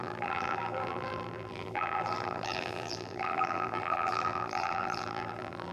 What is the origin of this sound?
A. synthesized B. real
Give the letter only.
A